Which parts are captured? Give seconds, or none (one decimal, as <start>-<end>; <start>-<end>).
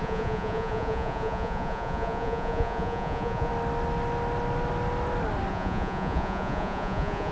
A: 3.5-5.5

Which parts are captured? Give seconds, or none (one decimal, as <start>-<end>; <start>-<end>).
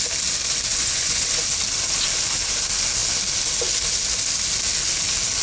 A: 0.0-0.7; 1.4-5.4